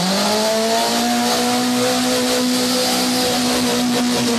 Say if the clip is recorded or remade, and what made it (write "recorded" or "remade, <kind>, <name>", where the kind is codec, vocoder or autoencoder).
recorded